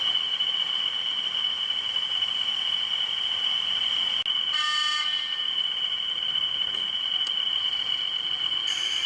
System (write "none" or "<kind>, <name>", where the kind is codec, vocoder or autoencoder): none